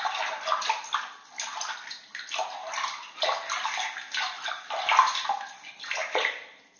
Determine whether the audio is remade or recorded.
recorded